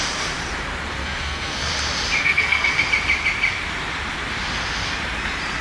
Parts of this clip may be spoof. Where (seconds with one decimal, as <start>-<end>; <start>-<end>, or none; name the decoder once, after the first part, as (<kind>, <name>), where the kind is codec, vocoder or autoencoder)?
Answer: 1.0-1.7 (codec, SNAC); 2.2-2.8